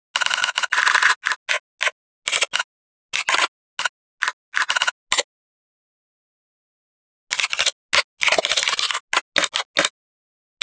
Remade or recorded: recorded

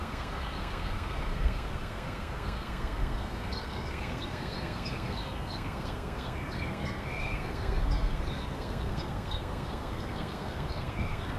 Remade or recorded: remade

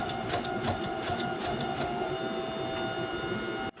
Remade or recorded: recorded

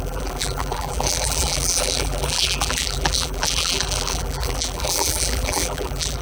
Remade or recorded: remade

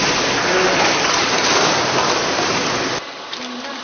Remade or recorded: recorded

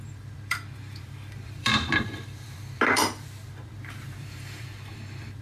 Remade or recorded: remade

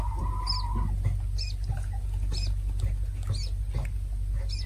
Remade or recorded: recorded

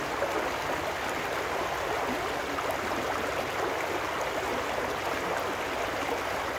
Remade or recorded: recorded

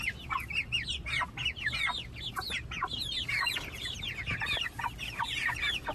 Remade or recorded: recorded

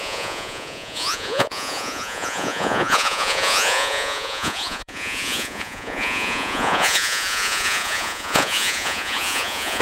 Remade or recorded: remade